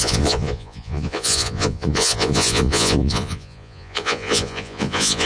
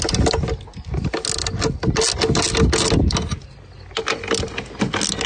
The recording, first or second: second